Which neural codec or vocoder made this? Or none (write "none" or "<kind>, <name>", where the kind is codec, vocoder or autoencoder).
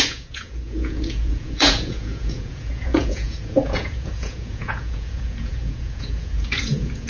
vocoder, Vocos